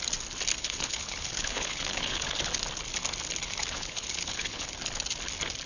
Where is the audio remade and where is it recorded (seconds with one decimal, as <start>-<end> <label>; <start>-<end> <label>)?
0.0-0.5 recorded; 0.5-2.5 remade; 2.5-3.6 recorded; 3.6-4.7 remade; 4.7-5.7 recorded